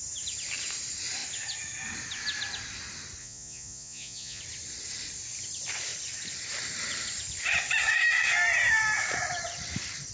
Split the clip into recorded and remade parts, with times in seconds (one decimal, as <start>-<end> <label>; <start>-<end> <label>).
0.0-3.2 recorded; 3.2-4.4 remade; 4.4-10.1 recorded